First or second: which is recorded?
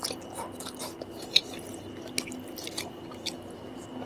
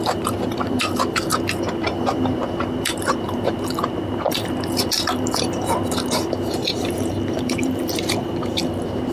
first